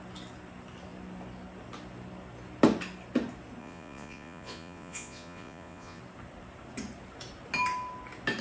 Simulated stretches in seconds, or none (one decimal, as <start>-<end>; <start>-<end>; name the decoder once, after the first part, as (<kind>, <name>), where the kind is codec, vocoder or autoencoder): 3.6-6.0 (vocoder, Vocos)